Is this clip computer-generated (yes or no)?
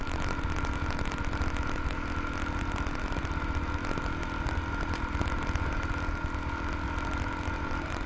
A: no